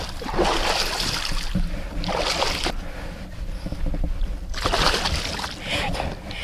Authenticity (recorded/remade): recorded